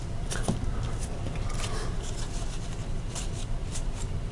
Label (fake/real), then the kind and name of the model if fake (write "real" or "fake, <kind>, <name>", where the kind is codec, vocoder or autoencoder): real